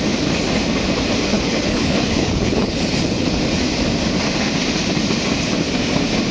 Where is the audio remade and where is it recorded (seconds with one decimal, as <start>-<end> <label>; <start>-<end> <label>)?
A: 0.0-1.3 recorded; 1.3-3.4 remade; 3.4-6.3 recorded